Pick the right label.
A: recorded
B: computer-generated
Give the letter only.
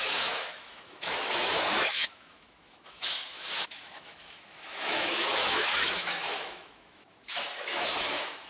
B